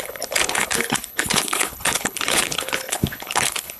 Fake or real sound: fake